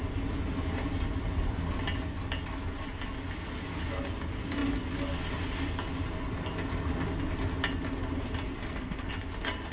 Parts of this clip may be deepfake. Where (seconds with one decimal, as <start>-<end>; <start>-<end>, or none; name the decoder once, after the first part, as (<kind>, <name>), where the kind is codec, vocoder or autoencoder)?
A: 8.6-9.1 (codec, SNAC)